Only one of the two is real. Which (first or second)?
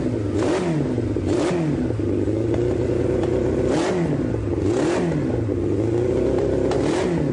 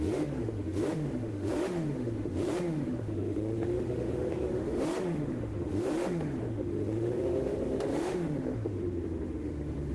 first